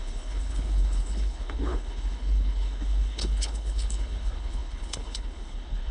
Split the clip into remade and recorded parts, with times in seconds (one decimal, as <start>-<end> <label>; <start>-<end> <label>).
0.0-5.9 remade